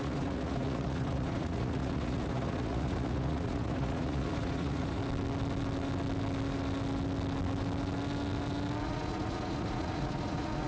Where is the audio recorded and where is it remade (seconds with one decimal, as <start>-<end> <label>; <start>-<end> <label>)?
0.0-5.0 remade; 5.0-8.8 recorded; 8.8-10.7 remade